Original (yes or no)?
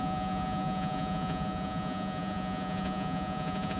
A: no